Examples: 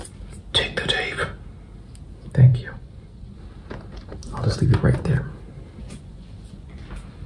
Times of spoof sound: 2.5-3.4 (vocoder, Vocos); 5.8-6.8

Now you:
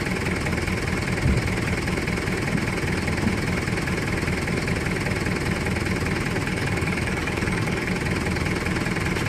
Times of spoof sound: 6.4-7.9 (codec, DAC)

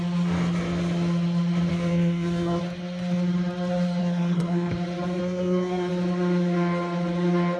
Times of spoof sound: 1.7-2.6 (codec, SNAC); 4.0-4.7; 5.2-5.9

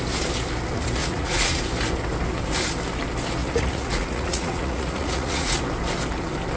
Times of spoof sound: 1.0-1.6 (vocoder, Vocos); 3.4-5.6

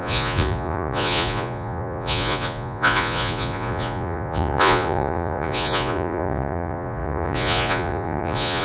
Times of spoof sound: 0.0-8.6 (vocoder, Vocos)

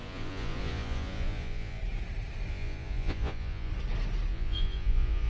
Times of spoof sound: 0.0-1.8 (vocoder, Vocos); 2.5-3.7; 4.3-5.3